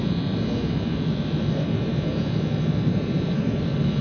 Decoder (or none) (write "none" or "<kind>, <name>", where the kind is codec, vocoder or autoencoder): none